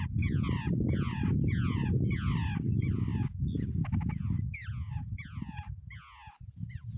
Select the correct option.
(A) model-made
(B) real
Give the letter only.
B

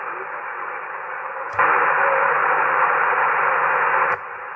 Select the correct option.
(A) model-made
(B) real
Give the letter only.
B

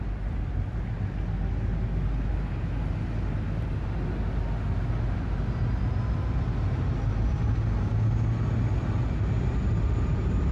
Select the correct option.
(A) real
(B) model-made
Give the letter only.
A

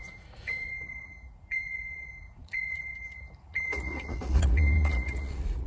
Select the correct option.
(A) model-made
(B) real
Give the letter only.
A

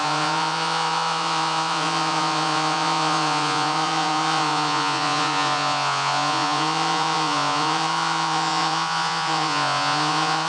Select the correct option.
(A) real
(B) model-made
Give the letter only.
B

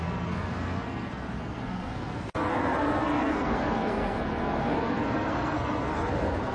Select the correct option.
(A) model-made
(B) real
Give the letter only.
A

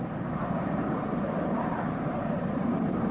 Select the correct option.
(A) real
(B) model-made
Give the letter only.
B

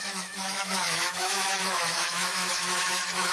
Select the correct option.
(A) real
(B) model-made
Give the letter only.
B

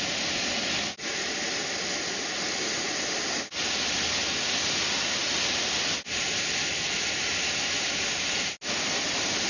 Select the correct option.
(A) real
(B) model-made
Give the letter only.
A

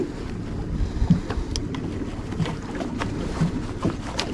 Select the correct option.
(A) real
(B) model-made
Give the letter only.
A